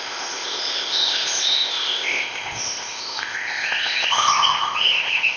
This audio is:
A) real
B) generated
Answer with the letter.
B